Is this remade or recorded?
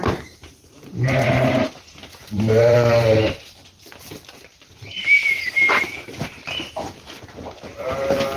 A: remade